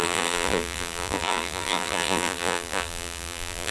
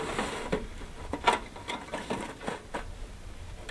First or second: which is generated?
first